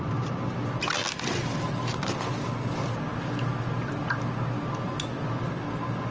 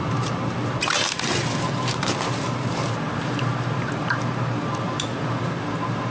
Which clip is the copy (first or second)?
second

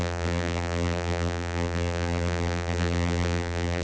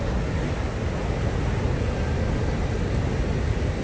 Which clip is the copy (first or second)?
first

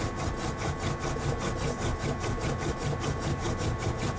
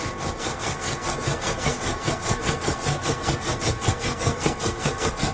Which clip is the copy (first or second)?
second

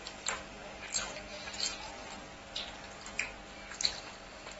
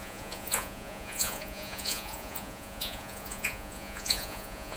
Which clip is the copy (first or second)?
second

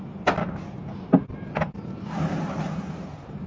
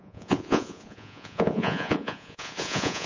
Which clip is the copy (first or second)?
second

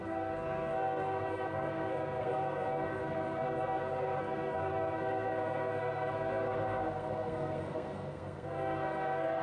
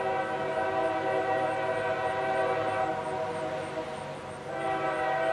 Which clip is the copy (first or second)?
first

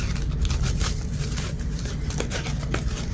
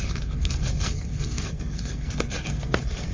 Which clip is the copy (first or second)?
second